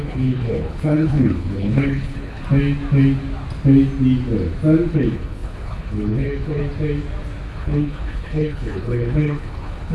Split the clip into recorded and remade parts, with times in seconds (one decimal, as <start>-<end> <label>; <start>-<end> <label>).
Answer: 0.0-2.4 remade; 2.4-4.9 recorded; 4.9-6.6 remade; 6.6-7.5 recorded; 7.5-9.9 remade